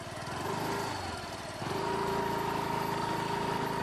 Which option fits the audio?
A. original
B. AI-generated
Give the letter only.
A